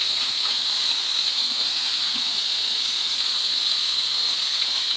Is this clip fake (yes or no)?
yes